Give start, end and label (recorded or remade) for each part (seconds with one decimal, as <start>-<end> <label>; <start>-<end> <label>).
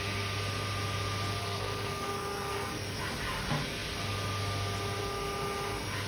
0.0-1.4 recorded; 1.4-3.0 remade; 3.0-6.1 recorded